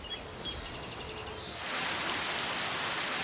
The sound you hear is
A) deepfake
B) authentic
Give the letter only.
B